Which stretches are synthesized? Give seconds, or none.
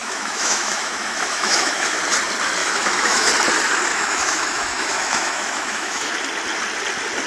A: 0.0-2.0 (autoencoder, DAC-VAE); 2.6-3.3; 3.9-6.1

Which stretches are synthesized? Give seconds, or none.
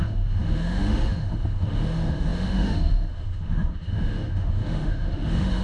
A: 0.0-5.6 (autoencoder, DAC-VAE)